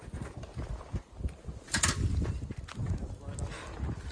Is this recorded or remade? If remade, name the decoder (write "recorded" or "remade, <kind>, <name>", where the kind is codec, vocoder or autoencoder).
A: recorded